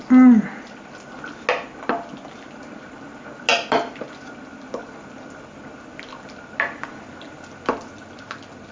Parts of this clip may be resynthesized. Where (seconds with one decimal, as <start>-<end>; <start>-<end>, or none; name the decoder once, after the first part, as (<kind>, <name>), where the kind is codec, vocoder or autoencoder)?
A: none